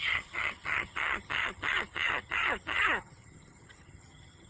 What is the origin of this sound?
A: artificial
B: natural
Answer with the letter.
A